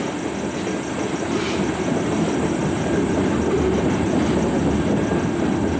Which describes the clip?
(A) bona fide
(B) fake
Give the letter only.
A